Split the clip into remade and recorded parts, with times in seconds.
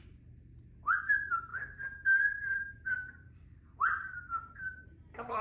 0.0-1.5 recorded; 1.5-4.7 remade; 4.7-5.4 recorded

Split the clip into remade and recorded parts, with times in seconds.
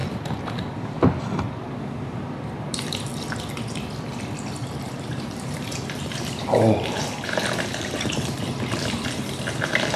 0.0-2.1 recorded; 2.1-3.1 remade; 3.1-4.8 recorded; 4.8-10.0 remade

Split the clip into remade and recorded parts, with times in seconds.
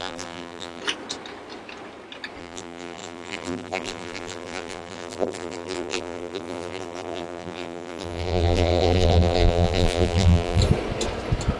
0.0-0.8 remade; 0.8-2.4 recorded; 2.4-10.6 remade; 10.6-11.6 recorded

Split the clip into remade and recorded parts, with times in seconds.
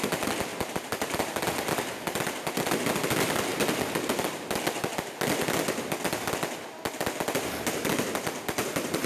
0.0-0.5 recorded; 0.5-1.3 remade; 1.3-9.1 recorded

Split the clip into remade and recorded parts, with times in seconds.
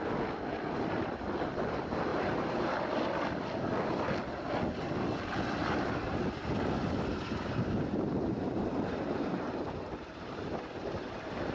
0.0-2.1 recorded; 2.1-2.9 remade; 2.9-5.6 recorded; 5.6-10.4 remade; 10.4-11.5 recorded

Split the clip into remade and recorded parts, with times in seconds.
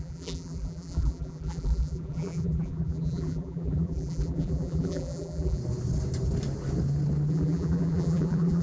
0.0-5.6 remade; 5.6-7.3 recorded; 7.3-8.6 remade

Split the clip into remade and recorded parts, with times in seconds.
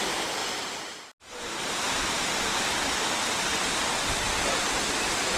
0.0-0.4 remade; 0.4-3.1 recorded; 3.1-3.5 remade; 3.5-4.5 recorded; 4.5-5.4 remade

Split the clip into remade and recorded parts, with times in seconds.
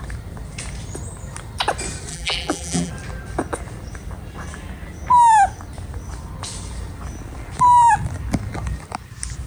0.0-2.1 recorded; 2.1-2.9 remade; 2.9-9.5 recorded